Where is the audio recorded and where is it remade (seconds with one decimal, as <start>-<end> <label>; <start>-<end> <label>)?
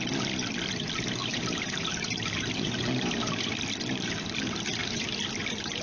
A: 0.0-1.2 recorded; 1.2-3.5 remade; 3.5-4.8 recorded; 4.8-5.8 remade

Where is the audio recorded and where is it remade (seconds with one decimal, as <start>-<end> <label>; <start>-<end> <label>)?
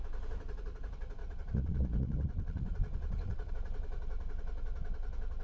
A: 0.0-1.2 recorded; 1.2-3.5 remade; 3.5-5.4 recorded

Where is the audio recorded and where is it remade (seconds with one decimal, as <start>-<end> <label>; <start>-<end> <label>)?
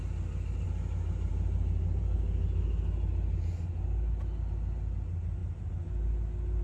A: 0.0-6.6 recorded